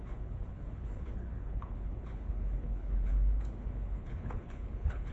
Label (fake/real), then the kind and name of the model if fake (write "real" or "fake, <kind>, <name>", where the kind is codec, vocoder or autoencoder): fake, codec, HILCodec